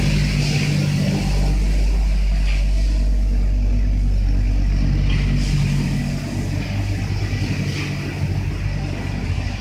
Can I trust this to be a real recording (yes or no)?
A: yes